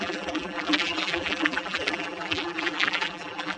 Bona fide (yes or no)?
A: no